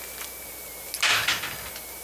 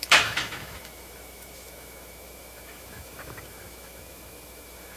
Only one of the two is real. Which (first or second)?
first